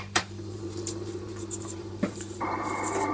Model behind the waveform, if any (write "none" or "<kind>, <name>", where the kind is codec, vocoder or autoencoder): vocoder, BigVGAN v2